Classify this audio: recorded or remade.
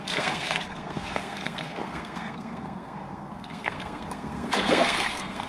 remade